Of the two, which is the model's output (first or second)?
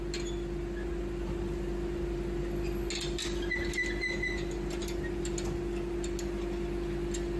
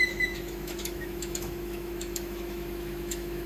second